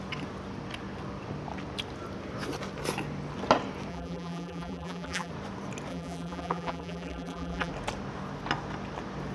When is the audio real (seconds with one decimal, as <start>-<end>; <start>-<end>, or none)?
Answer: 0.0-3.9; 5.3-5.9; 7.7-9.3